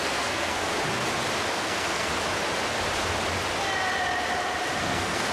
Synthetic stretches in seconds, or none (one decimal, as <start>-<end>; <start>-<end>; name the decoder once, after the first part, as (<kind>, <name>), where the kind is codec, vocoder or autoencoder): 0.0-0.7 (codec, SNAC); 1.5-2.1; 4.8-5.3